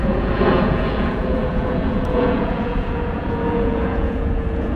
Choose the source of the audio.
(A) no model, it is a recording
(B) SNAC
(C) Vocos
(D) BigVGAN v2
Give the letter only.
C